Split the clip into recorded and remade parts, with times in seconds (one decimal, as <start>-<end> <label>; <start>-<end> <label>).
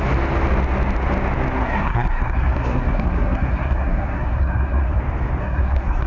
0.0-1.6 recorded; 1.6-5.0 remade; 5.0-5.4 recorded; 5.4-6.1 remade